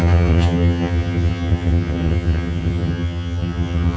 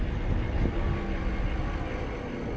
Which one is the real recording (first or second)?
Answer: second